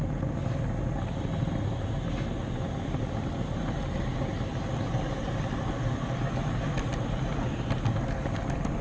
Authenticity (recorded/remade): recorded